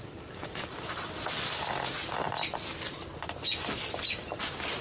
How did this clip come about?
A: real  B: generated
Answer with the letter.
A